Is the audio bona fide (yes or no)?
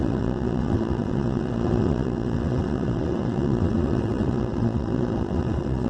no